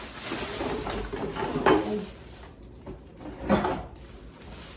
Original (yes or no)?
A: yes